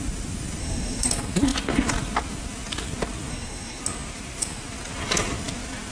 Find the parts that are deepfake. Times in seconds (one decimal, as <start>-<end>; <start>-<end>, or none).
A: 0.6-1.1; 3.3-3.8